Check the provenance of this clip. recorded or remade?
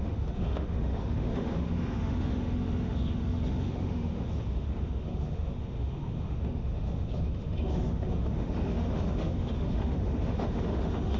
remade